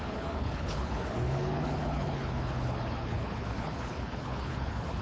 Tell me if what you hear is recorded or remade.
remade